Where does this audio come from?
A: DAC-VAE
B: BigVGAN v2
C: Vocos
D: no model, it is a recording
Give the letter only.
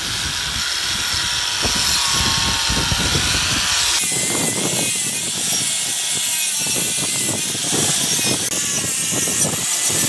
D